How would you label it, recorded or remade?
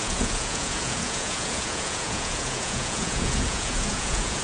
remade